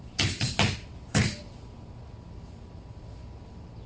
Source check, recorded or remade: recorded